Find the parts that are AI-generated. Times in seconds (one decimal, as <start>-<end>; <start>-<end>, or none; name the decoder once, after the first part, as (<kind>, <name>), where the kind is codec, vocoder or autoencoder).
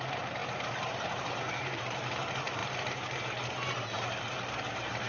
0.0-5.1 (vocoder, BigVGAN v2)